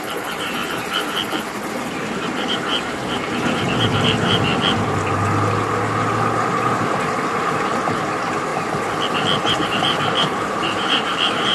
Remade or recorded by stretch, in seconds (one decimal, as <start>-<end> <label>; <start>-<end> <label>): 0.0-0.6 remade; 0.6-1.7 recorded; 1.7-4.5 remade; 4.5-6.5 recorded; 6.5-8.5 remade; 8.5-9.4 recorded; 9.4-11.5 remade